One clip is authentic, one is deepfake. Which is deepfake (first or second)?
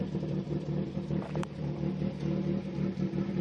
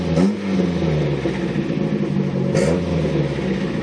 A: first